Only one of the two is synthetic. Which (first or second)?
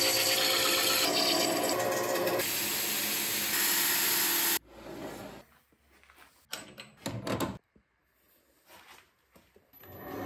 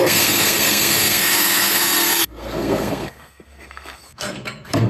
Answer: second